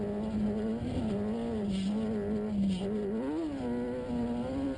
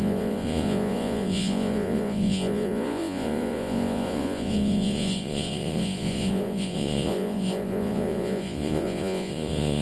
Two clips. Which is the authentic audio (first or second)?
first